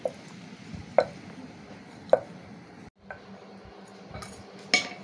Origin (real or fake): real